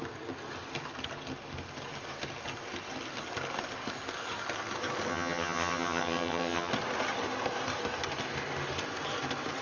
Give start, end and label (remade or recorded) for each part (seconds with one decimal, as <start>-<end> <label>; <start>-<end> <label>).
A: 0.0-5.1 recorded; 5.1-6.7 remade; 6.7-9.6 recorded